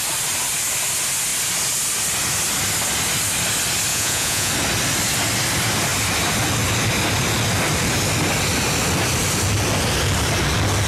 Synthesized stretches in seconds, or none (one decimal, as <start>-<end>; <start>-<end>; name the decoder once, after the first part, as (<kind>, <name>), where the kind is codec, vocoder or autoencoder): 3.9-4.5 (vocoder, Vocos)